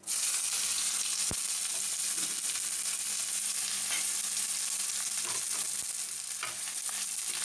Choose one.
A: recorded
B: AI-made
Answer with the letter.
A